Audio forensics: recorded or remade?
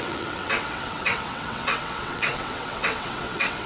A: remade